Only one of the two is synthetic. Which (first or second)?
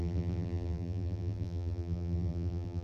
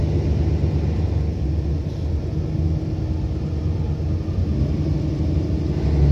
first